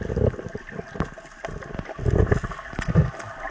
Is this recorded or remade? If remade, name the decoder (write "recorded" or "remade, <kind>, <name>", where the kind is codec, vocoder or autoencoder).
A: recorded